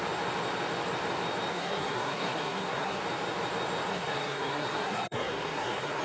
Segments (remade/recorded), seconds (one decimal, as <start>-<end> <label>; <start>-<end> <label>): 0.0-1.5 recorded; 1.5-3.0 remade; 3.0-3.9 recorded; 3.9-6.0 remade